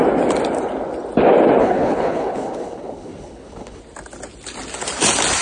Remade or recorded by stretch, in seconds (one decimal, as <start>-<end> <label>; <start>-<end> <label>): 0.0-1.6 recorded; 1.6-3.8 remade; 3.8-5.4 recorded